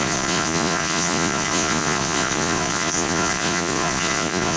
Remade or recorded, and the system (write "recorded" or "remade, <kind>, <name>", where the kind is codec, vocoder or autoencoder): remade, vocoder, Vocos